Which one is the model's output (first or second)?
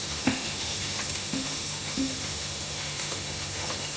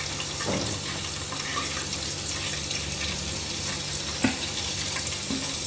first